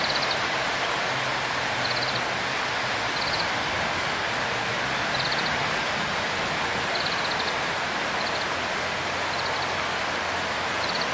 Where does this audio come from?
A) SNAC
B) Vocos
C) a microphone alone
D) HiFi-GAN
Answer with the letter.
C